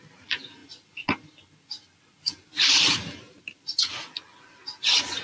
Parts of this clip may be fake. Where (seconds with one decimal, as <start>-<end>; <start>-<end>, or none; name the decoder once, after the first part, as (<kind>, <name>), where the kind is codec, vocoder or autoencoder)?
0.0-0.6 (vocoder, BigVGAN v2); 3.4-3.8; 4.5-5.2